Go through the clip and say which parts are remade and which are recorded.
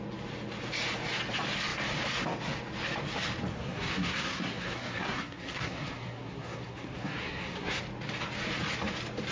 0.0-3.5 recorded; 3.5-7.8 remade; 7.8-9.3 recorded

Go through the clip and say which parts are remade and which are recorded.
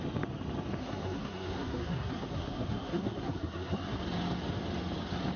0.0-0.8 recorded; 0.8-4.0 remade; 4.0-5.4 recorded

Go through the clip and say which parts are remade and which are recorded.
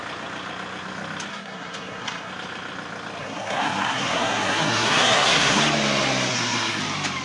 0.0-1.3 recorded; 1.3-2.3 remade; 2.3-3.2 recorded; 3.2-5.6 remade; 5.6-6.3 recorded; 6.3-6.8 remade; 6.8-7.2 recorded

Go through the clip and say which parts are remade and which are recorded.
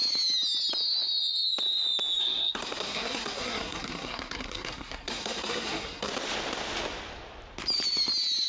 0.0-2.2 recorded; 2.2-6.1 remade; 6.1-8.5 recorded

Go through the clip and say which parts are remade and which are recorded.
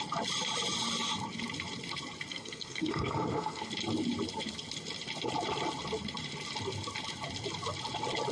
0.0-2.3 recorded; 2.3-3.7 remade; 3.7-8.3 recorded